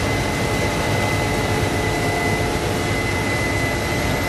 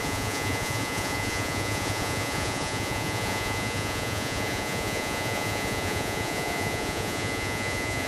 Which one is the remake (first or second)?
second